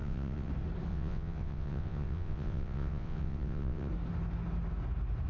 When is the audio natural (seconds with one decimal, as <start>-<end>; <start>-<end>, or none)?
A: 0.5-0.9; 3.9-5.3